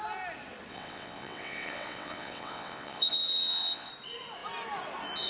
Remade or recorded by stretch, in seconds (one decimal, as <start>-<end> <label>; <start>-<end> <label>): 0.0-0.7 recorded; 0.7-3.9 remade; 3.9-5.3 recorded